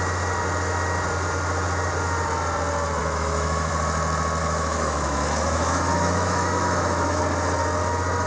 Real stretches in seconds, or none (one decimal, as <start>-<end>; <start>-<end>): 0.0-3.0; 3.7-4.4; 7.2-8.3